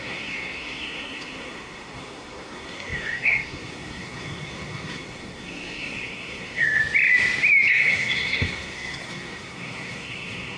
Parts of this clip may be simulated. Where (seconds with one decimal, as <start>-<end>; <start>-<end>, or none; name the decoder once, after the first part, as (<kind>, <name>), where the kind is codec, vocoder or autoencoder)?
0.0-6.8 (codec, SNAC); 7.7-10.6